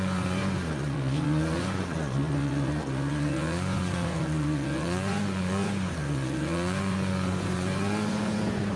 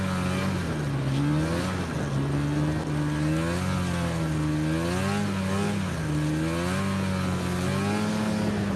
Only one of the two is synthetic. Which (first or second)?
first